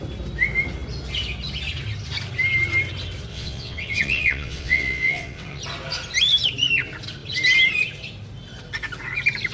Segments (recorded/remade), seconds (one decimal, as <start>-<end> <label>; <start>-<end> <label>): 0.0-3.3 recorded; 3.3-5.6 remade; 5.6-9.5 recorded